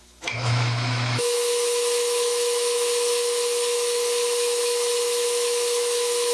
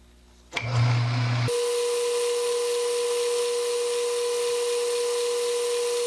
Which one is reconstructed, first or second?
first